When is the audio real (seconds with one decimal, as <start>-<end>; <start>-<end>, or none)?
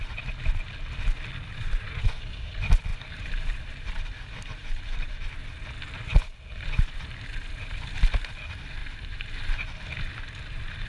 0.0-2.9; 3.9-4.6; 5.2-8.8; 9.3-10.9